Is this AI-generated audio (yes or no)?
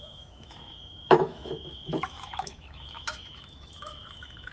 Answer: yes